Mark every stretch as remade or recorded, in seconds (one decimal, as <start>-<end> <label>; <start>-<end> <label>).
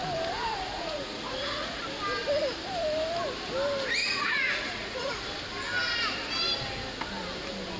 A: 0.0-0.5 recorded; 0.5-1.8 remade; 1.8-4.0 recorded; 4.0-5.1 remade; 5.1-7.8 recorded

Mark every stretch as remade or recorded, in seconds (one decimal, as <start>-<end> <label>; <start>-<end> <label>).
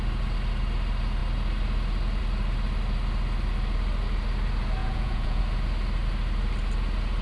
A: 0.0-4.8 recorded; 4.8-5.4 remade; 5.4-7.2 recorded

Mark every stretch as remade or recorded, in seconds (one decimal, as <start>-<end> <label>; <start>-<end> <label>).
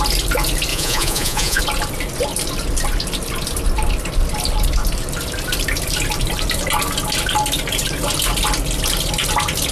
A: 0.0-0.7 recorded; 0.7-1.6 remade; 1.6-9.7 recorded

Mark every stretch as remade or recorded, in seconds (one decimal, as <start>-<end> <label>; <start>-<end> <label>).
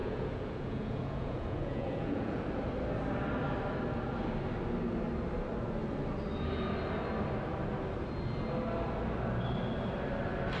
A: 0.0-2.4 remade; 2.4-10.6 recorded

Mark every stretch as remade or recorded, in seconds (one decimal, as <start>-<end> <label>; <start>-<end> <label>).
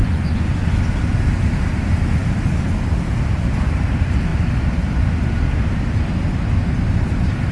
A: 0.0-0.7 remade; 0.7-7.5 recorded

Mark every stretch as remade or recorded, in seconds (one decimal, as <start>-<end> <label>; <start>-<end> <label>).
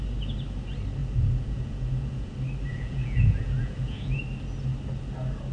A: 0.0-1.0 recorded; 1.0-2.3 remade; 2.3-2.7 recorded; 2.7-4.2 remade; 4.2-5.5 recorded